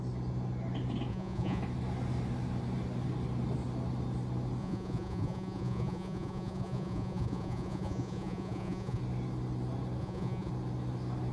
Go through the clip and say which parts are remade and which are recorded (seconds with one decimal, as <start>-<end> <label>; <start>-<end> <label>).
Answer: 0.0-1.1 recorded; 1.1-1.6 remade; 1.6-4.6 recorded; 4.6-9.0 remade; 9.0-10.0 recorded; 10.0-10.5 remade; 10.5-11.3 recorded